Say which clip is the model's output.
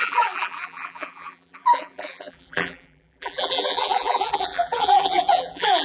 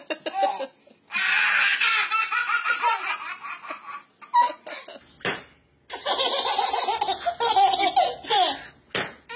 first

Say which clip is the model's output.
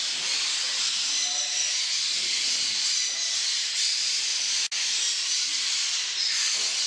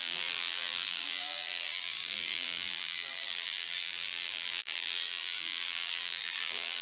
second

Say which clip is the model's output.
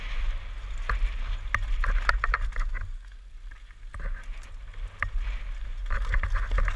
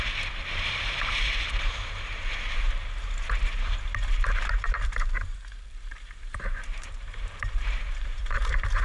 second